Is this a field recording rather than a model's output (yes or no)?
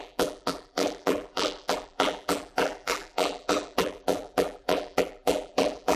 no